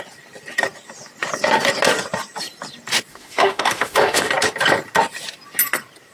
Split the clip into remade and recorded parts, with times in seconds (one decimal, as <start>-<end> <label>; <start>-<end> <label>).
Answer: 0.0-3.1 recorded; 3.1-4.3 remade; 4.3-6.1 recorded